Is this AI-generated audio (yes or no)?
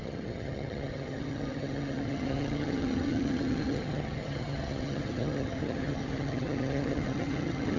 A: yes